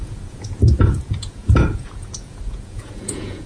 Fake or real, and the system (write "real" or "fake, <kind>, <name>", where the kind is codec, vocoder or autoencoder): fake, vocoder, Vocos